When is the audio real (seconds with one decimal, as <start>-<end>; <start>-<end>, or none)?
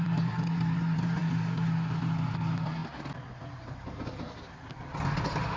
0.0-5.6